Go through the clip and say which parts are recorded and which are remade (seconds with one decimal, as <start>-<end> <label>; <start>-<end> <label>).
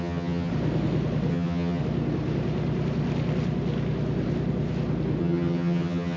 0.0-0.5 remade; 0.5-1.3 recorded; 1.3-1.8 remade; 1.8-5.2 recorded; 5.2-6.2 remade